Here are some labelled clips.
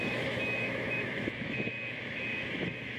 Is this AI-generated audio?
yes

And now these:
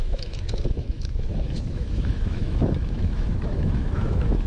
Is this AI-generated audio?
yes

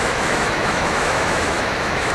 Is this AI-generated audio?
yes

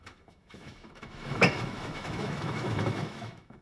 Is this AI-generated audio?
yes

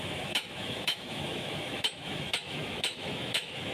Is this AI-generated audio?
yes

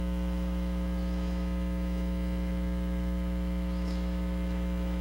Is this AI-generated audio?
yes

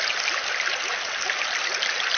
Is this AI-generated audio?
no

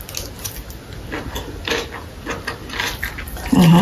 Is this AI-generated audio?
no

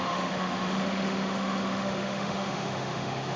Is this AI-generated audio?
yes